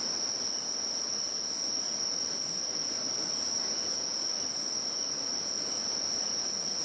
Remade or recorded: recorded